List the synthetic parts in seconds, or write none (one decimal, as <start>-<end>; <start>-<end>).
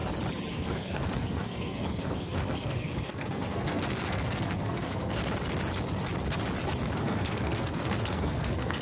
0.5-5.2; 7.0-8.8